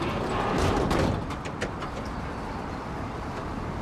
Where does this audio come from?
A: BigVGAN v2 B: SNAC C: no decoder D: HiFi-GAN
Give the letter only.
C